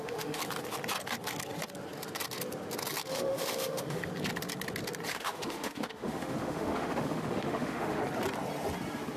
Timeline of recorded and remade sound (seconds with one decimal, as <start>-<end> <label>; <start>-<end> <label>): 0.0-0.4 remade; 0.4-3.1 recorded; 3.1-4.0 remade; 4.0-5.1 recorded; 5.1-8.0 remade; 8.0-9.2 recorded